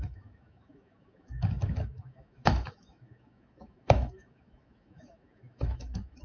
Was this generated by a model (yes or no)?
yes